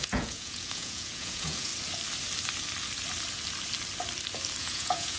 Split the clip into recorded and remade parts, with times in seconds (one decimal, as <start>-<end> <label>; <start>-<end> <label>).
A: 0.0-1.7 remade; 1.7-4.6 recorded; 4.6-5.2 remade